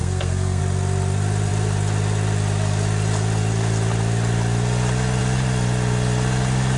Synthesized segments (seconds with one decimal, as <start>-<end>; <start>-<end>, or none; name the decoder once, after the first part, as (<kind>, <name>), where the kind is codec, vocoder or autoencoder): 0.0-0.6 (codec, SNAC)